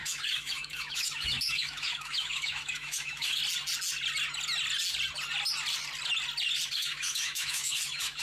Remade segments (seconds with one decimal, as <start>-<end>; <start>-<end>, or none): 0.0-3.4; 6.7-8.2